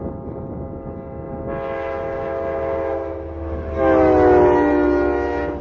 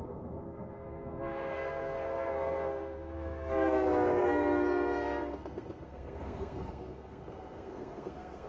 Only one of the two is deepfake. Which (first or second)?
second